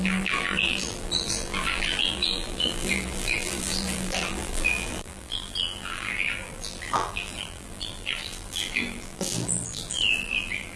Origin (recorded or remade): remade